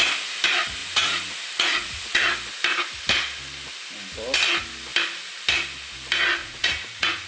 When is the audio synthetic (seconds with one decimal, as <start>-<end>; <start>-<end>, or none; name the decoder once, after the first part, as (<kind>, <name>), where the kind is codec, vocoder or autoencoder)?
0.8-2.3 (vocoder, Vocos); 6.4-7.3